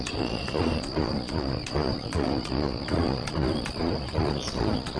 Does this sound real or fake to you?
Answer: fake